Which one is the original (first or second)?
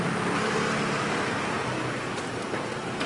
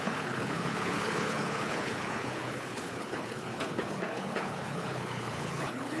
first